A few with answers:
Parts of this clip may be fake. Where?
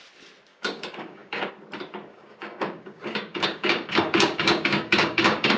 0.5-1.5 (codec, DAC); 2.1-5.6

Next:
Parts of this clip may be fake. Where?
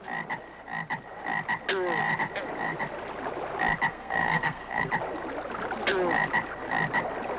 3.9-4.9 (codec, SNAC)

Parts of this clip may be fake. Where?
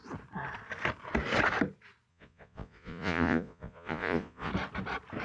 2.1-4.5 (vocoder, Vocos)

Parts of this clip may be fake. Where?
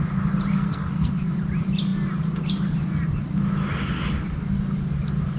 0.5-1.3 (codec, SNAC)